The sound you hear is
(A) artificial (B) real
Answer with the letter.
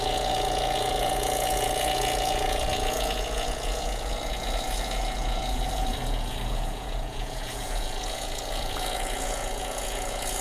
A